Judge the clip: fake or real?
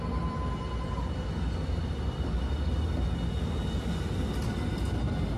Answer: real